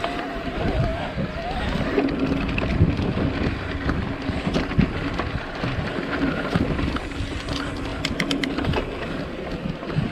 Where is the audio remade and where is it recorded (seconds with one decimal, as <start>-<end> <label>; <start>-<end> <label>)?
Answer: 0.0-10.1 recorded